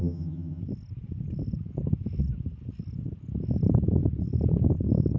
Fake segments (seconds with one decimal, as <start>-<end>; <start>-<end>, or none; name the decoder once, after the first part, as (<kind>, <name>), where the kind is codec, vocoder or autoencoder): 0.0-0.6 (vocoder, HiFi-GAN)